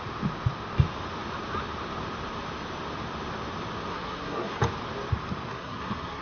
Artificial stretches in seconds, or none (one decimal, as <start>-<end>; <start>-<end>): 3.9-4.6; 5.5-6.2